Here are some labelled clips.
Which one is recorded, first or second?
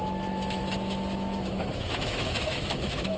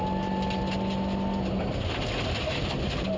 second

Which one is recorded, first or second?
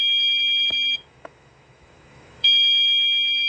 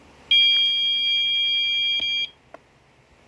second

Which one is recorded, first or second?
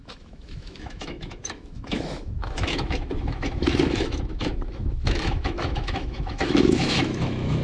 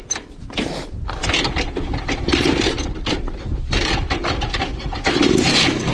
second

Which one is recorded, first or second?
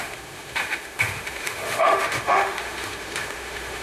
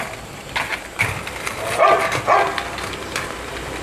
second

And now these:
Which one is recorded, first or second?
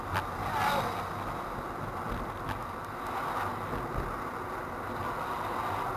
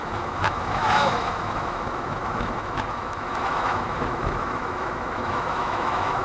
first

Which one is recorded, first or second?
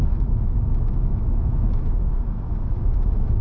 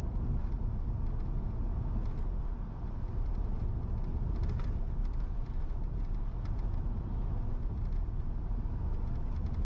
second